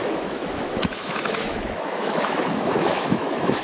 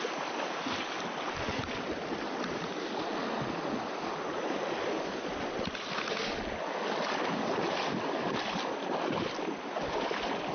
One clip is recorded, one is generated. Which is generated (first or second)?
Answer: first